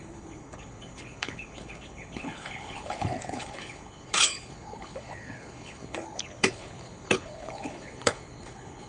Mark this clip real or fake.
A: fake